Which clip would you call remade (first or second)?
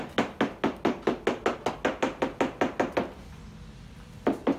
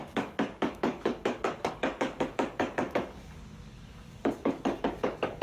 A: second